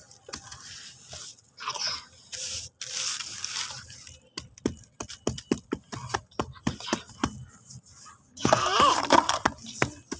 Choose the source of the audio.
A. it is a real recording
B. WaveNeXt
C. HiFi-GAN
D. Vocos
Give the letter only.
A